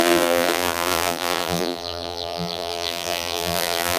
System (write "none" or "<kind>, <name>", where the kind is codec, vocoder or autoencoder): vocoder, BigVGAN v2